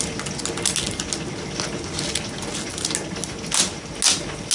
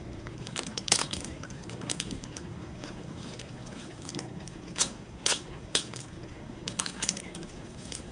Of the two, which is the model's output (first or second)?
second